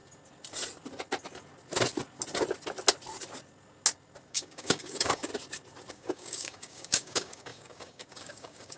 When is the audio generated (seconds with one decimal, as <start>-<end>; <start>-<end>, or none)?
4.3-5.3; 5.9-8.8